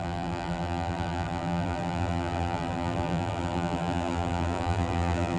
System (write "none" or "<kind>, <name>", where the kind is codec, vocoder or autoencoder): vocoder, BigVGAN v2